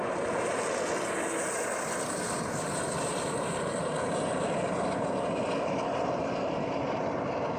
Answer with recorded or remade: recorded